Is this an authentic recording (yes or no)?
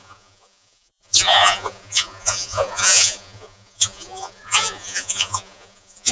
no